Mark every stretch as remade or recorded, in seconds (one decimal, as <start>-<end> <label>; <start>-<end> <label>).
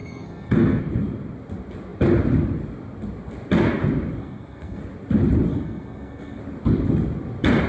0.0-0.8 remade; 0.8-4.2 recorded; 4.2-4.8 remade; 4.8-5.5 recorded; 5.5-6.4 remade; 6.4-7.7 recorded